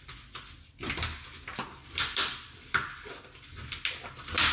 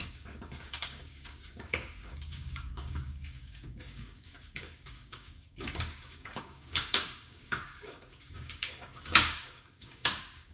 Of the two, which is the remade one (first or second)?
second